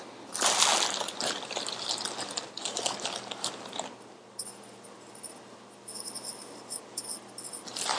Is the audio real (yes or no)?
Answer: yes